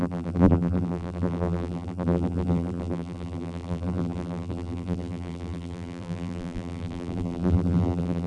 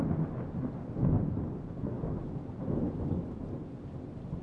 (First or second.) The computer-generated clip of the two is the first